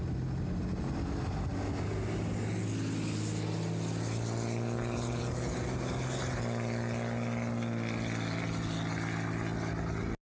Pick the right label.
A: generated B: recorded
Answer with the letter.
B